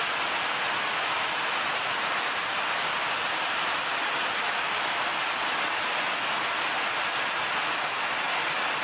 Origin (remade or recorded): recorded